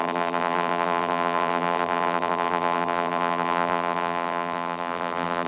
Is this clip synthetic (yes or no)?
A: yes